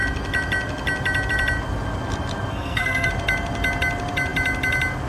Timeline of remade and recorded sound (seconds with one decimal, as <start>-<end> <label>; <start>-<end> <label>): 0.0-2.5 recorded; 2.5-3.1 remade; 3.1-5.1 recorded